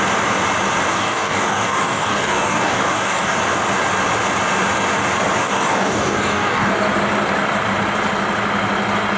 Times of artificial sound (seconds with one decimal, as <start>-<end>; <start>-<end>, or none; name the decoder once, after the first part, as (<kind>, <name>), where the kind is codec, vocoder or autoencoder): 0.9-3.4 (codec, DAC); 5.4-6.7